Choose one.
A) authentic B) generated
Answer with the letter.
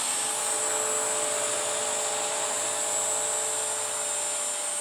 A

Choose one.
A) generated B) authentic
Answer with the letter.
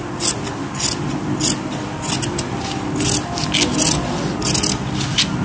B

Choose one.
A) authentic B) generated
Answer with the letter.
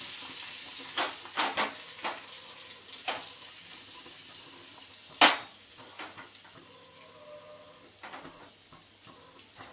A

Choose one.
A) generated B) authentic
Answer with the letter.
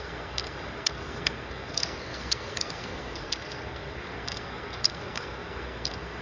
A